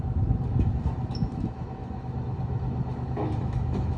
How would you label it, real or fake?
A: fake